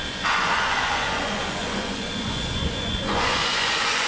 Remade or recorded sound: remade